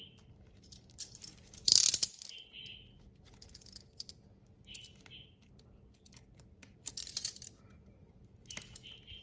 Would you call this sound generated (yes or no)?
no